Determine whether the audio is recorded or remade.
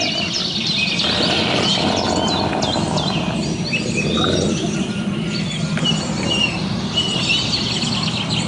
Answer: recorded